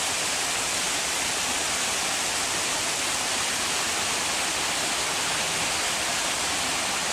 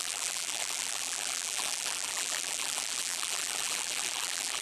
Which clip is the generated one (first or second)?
second